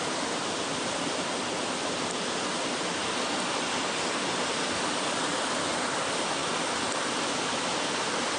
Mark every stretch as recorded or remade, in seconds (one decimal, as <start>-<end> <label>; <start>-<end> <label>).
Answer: 0.0-8.4 recorded